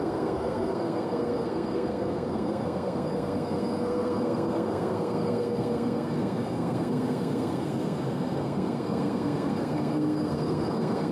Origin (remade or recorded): remade